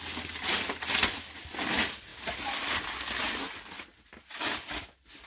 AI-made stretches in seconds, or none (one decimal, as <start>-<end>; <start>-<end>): none